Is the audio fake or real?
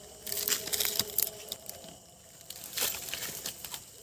fake